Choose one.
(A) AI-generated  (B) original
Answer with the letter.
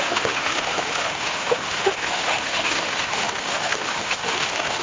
A